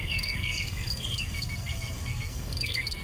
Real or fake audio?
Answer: fake